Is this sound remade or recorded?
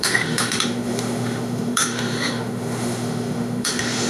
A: remade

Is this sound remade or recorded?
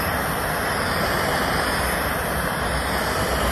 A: recorded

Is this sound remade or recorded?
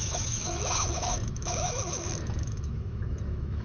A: remade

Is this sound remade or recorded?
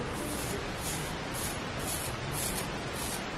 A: recorded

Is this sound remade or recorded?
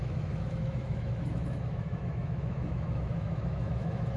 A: remade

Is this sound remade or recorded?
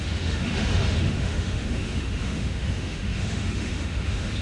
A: remade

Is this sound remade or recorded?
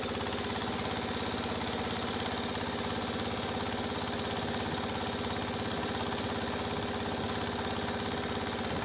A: recorded